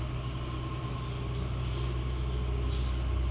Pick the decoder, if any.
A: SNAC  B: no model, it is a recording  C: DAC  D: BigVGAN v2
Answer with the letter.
B